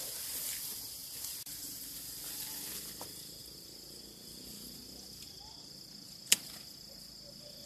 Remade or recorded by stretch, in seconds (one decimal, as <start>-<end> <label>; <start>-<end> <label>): 0.0-7.7 recorded